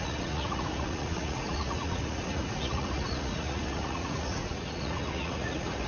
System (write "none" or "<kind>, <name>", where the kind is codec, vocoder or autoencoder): vocoder, Vocos